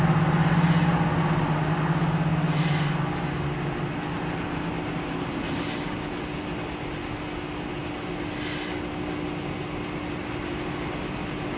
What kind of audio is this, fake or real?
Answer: real